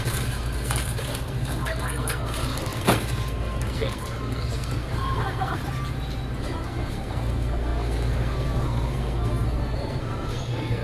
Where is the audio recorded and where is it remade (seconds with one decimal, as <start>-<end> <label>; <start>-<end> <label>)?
0.0-5.6 remade; 5.6-6.4 recorded; 6.4-10.8 remade

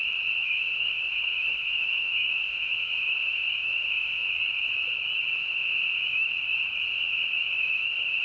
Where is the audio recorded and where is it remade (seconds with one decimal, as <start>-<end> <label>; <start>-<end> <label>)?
0.0-0.4 recorded; 0.4-4.3 remade; 4.3-5.3 recorded; 5.3-6.3 remade; 6.3-6.9 recorded; 6.9-8.2 remade

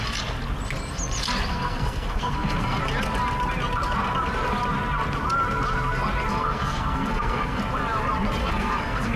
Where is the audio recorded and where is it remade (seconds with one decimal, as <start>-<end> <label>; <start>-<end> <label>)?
0.0-1.5 recorded; 1.5-2.8 remade; 2.8-6.3 recorded; 6.3-7.6 remade; 7.6-8.4 recorded; 8.4-9.2 remade

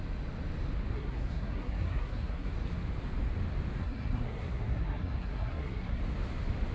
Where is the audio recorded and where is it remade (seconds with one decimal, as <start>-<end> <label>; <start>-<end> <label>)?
0.0-0.9 recorded; 0.9-2.5 remade; 2.5-3.8 recorded; 3.8-6.0 remade; 6.0-6.7 recorded